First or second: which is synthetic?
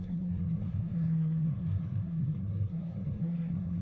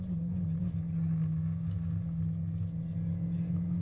first